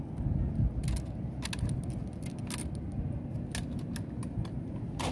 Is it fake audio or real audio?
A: real